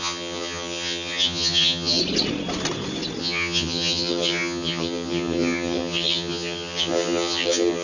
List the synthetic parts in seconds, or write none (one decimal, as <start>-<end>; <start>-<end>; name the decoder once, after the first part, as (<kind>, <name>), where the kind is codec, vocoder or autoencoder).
0.0-2.0 (vocoder, HiFi-GAN); 3.2-7.8